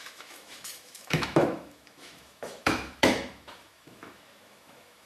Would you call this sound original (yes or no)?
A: no